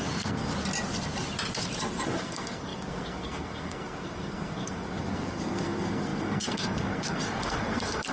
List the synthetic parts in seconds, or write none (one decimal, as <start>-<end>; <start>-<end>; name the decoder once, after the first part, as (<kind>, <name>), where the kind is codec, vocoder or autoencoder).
0.0-0.5 (codec, SNAC); 2.2-8.1